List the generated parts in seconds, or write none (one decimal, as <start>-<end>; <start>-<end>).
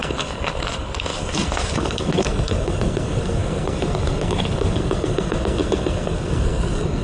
0.0-7.0